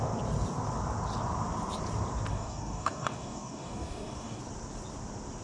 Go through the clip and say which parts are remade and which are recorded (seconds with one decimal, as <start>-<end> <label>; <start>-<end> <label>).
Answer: 0.0-2.3 recorded; 2.3-4.4 remade; 4.4-5.4 recorded